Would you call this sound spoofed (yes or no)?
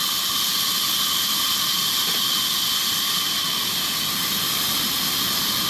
no